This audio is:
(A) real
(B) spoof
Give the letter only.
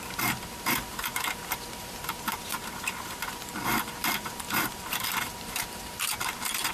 B